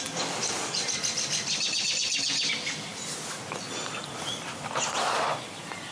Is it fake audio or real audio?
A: fake